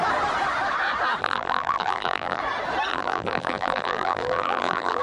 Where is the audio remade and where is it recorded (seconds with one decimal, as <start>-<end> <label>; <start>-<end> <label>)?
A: 0.0-1.2 recorded; 1.2-2.4 remade; 2.4-2.9 recorded; 2.9-5.0 remade